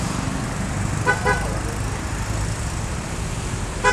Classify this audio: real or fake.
real